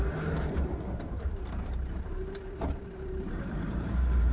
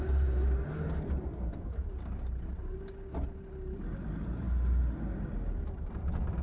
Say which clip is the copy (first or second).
first